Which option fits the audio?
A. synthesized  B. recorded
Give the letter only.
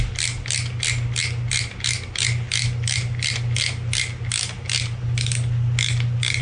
B